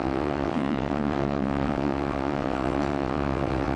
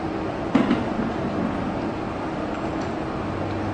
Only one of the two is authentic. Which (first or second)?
second